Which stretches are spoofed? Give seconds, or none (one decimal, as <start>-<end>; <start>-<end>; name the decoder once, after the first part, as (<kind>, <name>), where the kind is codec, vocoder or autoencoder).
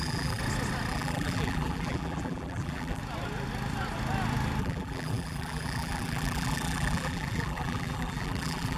0.0-0.4 (vocoder, BigVGAN v2); 0.9-3.0; 4.6-8.8